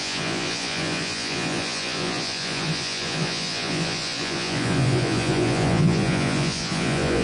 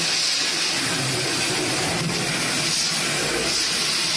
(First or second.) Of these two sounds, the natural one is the second